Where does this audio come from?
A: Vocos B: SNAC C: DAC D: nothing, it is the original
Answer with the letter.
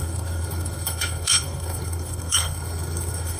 B